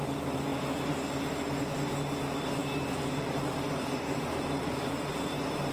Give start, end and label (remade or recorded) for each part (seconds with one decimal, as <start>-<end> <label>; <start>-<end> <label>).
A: 0.0-5.7 recorded